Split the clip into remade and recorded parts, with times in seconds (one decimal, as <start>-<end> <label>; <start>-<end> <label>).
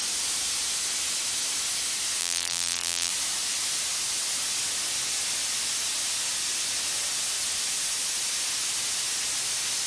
0.0-2.2 recorded; 2.2-3.1 remade; 3.1-9.9 recorded